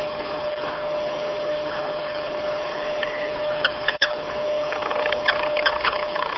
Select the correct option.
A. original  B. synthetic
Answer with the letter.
B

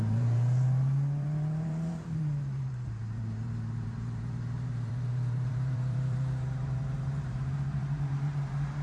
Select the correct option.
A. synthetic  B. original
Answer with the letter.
A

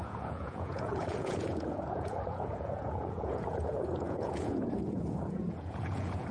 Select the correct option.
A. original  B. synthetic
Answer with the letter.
B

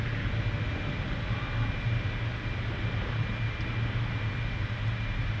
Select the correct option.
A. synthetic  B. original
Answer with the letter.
B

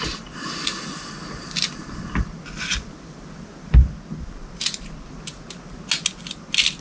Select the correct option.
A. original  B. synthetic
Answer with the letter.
A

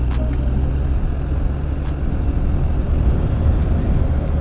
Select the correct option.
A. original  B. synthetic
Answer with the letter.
A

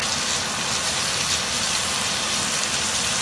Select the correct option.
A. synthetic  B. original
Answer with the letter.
B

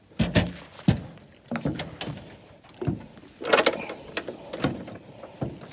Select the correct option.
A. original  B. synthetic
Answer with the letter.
A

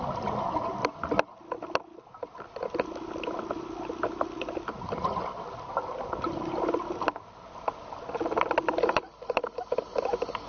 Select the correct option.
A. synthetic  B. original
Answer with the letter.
B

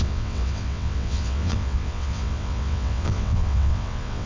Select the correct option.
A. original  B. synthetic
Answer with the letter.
B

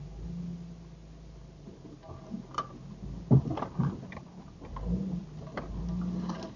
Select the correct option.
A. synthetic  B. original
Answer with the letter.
B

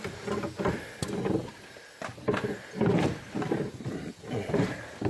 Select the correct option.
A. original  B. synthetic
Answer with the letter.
A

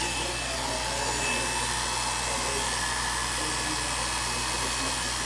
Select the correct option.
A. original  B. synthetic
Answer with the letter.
A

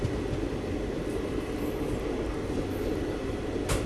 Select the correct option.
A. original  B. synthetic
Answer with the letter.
A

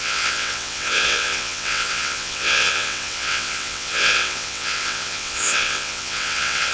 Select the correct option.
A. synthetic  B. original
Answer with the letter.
A